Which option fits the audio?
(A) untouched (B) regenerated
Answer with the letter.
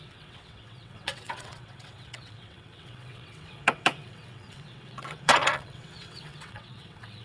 B